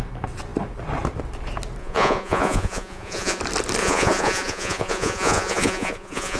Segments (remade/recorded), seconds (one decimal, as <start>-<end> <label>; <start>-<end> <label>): 0.0-1.8 recorded; 1.8-3.4 remade; 3.4-3.8 recorded; 3.8-6.4 remade